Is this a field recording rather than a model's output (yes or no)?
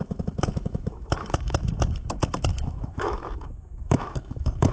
no